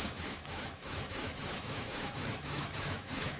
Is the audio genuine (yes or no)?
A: no